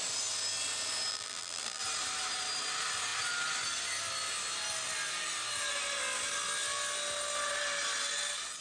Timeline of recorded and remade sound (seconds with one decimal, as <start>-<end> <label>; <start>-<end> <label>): 0.0-1.1 recorded; 1.1-1.8 remade; 1.8-8.6 recorded